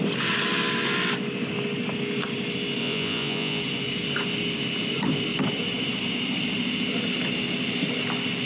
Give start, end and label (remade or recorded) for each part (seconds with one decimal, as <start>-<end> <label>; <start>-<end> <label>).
0.0-2.8 recorded; 2.8-3.6 remade; 3.6-8.5 recorded